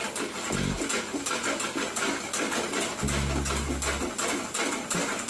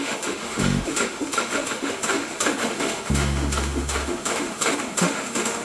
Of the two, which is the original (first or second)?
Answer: first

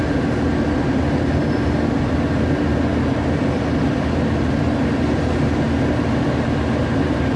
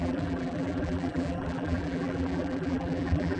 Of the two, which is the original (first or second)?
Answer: first